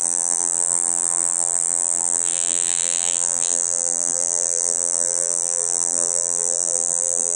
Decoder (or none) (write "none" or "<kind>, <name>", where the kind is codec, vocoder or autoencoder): vocoder, BigVGAN v2